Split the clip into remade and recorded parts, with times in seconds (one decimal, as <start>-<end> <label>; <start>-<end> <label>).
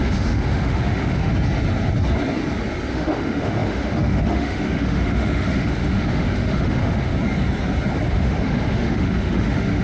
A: 0.0-1.3 remade; 1.3-2.9 recorded; 2.9-7.1 remade; 7.1-8.1 recorded; 8.1-9.8 remade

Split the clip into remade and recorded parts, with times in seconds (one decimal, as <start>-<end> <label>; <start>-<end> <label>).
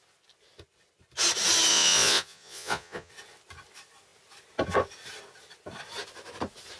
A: 0.0-1.7 recorded; 1.7-3.1 remade; 3.1-6.8 recorded